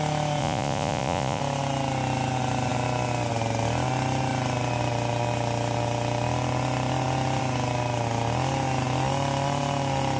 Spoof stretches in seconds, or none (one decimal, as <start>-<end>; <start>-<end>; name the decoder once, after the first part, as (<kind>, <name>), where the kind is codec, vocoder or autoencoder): 0.4-1.4 (vocoder, Vocos)